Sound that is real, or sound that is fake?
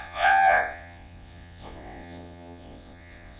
fake